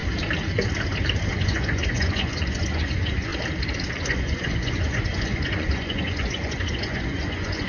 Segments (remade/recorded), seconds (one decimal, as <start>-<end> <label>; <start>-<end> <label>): 0.0-1.3 recorded; 1.3-3.3 remade; 3.3-3.9 recorded; 3.9-7.7 remade